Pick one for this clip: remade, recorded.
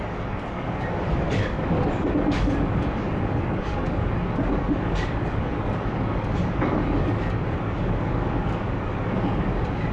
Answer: remade